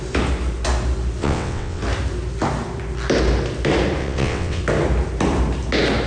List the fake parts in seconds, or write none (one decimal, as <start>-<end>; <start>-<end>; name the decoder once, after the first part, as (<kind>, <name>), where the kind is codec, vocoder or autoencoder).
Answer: 1.2-1.8 (vocoder, WaveNeXt); 4.0-4.6